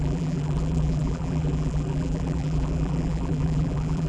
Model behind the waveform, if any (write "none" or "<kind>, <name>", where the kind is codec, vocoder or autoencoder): vocoder, BigVGAN v2